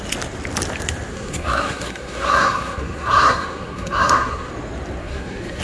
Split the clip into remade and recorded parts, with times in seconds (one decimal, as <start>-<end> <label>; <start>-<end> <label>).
0.0-1.1 recorded; 1.1-4.5 remade; 4.5-5.0 recorded; 5.0-5.6 remade